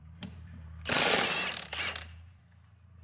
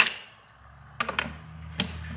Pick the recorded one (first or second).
second